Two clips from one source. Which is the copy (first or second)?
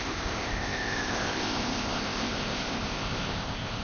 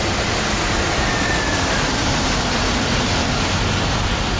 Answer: first